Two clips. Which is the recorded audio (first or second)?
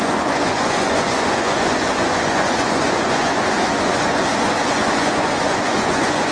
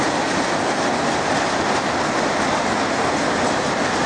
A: second